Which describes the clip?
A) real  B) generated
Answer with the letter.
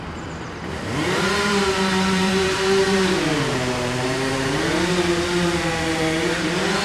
B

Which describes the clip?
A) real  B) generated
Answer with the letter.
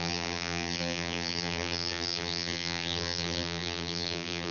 B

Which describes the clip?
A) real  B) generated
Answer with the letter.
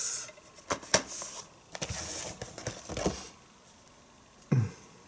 A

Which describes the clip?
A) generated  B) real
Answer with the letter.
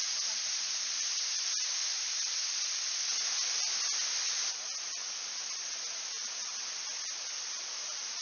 B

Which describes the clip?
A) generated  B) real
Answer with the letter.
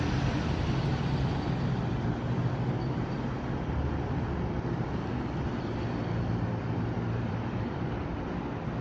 A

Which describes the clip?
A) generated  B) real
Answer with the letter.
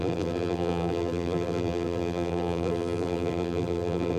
A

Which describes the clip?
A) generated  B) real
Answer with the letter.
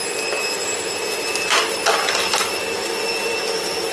A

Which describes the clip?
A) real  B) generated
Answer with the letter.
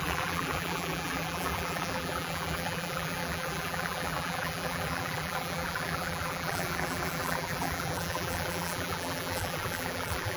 B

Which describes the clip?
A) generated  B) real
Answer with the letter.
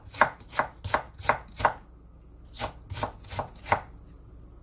B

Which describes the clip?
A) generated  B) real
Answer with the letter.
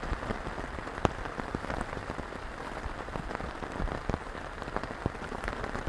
A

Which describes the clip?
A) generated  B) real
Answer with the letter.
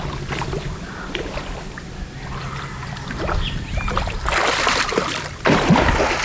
A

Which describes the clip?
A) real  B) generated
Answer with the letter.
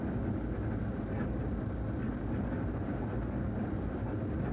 A